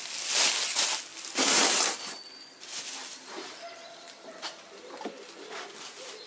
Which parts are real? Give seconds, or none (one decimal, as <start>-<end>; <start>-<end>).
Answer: 0.0-1.1; 4.9-6.3